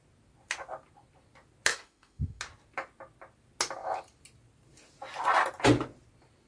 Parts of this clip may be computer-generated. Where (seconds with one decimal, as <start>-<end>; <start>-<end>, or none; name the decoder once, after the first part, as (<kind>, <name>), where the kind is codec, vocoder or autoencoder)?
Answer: 1.7-2.4 (autoencoder, DAC-VAE)